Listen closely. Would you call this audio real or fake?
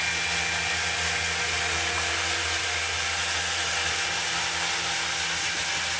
real